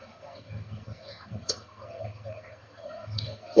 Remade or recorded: remade